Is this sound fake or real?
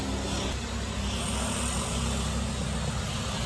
real